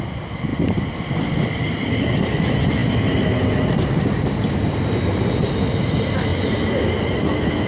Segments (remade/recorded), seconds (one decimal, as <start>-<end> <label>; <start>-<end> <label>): 0.0-0.5 recorded; 0.5-1.2 remade; 1.2-7.7 recorded